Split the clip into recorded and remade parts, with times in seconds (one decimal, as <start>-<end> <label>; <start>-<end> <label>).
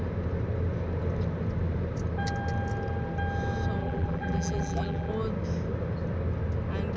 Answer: 0.0-3.8 recorded; 3.8-5.1 remade; 5.1-7.0 recorded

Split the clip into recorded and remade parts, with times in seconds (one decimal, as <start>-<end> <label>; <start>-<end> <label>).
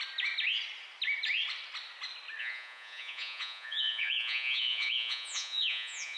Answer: 0.0-2.4 recorded; 2.4-6.2 remade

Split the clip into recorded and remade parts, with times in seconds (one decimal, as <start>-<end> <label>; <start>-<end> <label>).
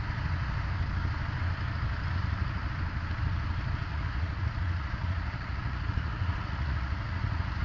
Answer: 0.0-2.2 recorded; 2.2-2.7 remade; 2.7-3.9 recorded; 3.9-7.6 remade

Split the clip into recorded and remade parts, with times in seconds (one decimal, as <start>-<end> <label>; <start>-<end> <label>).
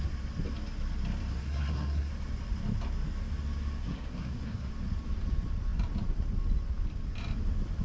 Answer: 0.0-1.3 recorded; 1.3-2.1 remade; 2.1-3.8 recorded; 3.8-4.7 remade; 4.7-7.8 recorded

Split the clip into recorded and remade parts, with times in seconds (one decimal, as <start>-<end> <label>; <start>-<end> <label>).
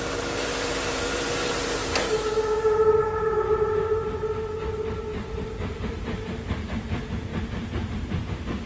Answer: 0.0-1.8 remade; 1.8-5.7 recorded; 5.7-7.3 remade; 7.3-8.7 recorded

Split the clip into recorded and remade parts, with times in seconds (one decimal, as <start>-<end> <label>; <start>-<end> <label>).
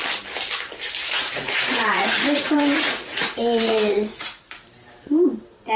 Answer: 0.0-1.0 recorded; 1.0-4.5 remade; 4.5-5.8 recorded